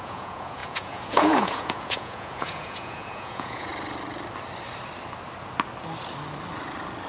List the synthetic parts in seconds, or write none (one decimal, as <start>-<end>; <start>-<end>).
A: 0.0-3.7

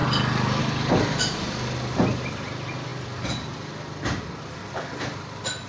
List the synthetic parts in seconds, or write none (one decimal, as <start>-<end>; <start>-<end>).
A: none